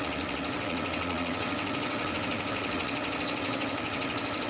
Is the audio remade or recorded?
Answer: remade